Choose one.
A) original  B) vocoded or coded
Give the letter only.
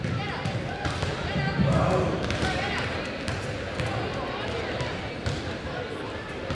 A